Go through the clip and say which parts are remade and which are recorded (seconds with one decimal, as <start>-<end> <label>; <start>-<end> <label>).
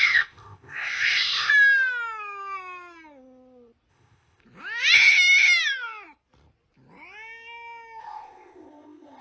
0.0-1.5 remade; 1.5-3.9 recorded; 3.9-4.4 remade; 4.4-8.0 recorded; 8.0-9.2 remade